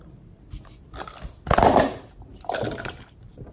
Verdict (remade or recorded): recorded